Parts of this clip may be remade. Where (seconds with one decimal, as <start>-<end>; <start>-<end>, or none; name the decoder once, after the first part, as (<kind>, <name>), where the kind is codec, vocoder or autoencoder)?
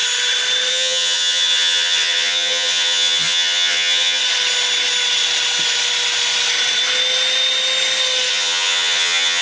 0.7-4.2 (vocoder, HiFi-GAN); 8.3-9.4